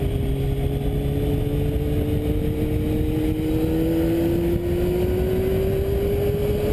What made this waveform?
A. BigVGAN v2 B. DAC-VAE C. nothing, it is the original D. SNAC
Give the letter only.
C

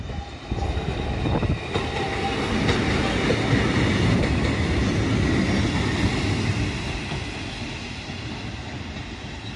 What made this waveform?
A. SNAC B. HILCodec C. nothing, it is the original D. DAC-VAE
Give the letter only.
C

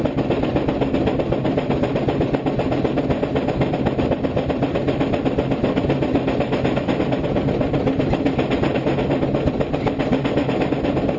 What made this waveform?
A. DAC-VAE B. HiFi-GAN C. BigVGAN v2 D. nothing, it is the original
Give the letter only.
D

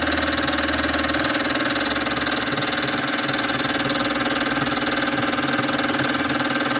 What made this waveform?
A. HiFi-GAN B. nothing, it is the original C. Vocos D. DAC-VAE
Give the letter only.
B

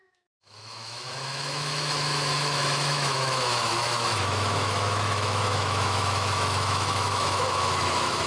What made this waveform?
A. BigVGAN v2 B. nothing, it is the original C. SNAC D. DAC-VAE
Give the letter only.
D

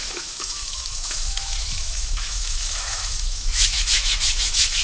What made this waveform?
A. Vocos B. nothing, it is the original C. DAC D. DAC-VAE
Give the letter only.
D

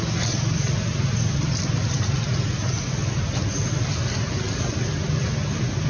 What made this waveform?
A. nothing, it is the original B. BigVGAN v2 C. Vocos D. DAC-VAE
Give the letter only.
A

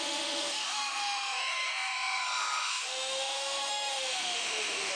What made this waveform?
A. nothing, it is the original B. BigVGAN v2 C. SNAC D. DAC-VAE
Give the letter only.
D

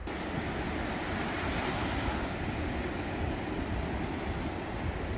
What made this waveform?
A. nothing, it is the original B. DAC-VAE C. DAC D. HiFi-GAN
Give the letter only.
A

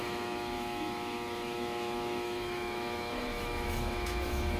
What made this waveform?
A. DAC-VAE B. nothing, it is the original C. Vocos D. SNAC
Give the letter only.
A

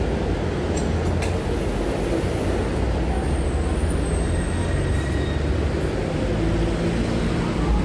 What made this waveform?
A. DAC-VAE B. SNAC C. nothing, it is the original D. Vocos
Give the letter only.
C